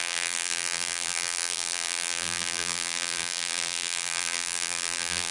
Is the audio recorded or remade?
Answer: remade